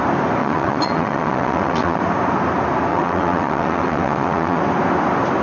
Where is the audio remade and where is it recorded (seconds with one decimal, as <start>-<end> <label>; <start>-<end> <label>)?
0.0-0.4 recorded; 0.4-2.0 remade; 2.0-2.9 recorded; 2.9-4.6 remade; 4.6-5.4 recorded